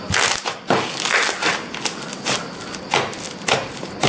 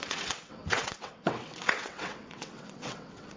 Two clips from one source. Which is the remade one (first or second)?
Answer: second